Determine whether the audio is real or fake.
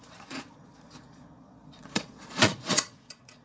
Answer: fake